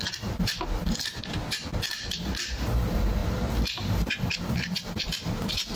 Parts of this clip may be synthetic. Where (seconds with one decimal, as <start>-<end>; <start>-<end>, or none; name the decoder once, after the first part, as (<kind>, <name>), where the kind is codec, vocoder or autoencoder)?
0.0-5.8 (vocoder, BigVGAN v2)